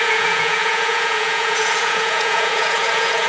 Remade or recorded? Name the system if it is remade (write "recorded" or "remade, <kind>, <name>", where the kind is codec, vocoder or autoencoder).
remade, vocoder, Vocos